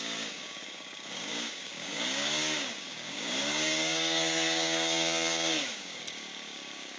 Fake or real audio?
fake